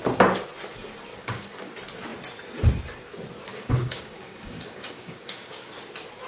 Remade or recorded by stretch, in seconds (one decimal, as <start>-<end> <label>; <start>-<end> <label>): 0.0-1.1 recorded; 1.1-1.7 remade; 1.7-3.5 recorded; 3.5-5.7 remade; 5.7-6.3 recorded